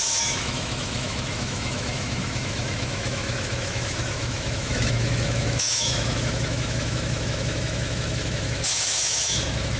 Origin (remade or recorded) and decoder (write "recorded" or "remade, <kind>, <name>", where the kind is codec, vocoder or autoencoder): remade, autoencoder, DAC-VAE